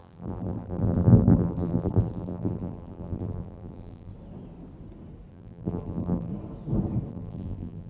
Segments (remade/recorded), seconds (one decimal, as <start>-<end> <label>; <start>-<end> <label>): 0.0-4.1 remade; 4.1-5.3 recorded; 5.3-6.3 remade; 6.3-7.1 recorded; 7.1-7.9 remade